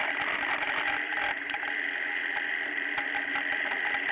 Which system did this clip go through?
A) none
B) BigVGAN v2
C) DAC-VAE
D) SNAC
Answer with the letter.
B